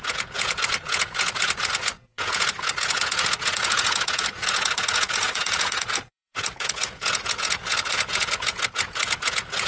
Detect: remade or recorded remade